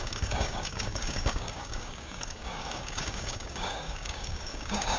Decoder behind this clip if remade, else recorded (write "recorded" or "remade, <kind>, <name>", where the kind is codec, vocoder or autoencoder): remade, codec, DAC